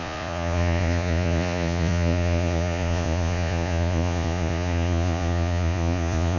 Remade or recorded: remade